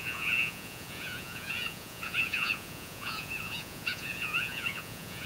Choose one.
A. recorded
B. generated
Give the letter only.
B